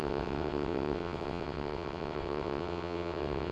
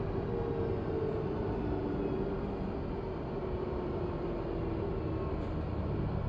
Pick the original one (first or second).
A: second